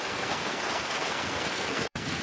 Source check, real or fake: fake